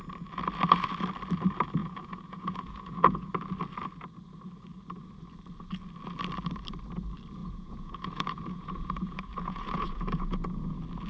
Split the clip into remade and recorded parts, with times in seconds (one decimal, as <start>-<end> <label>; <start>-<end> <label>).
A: 0.0-1.8 recorded; 1.8-3.3 remade; 3.3-7.4 recorded; 7.4-10.7 remade; 10.7-11.1 recorded